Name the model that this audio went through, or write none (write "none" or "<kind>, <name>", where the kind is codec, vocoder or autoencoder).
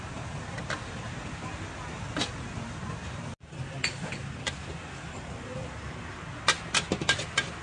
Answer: none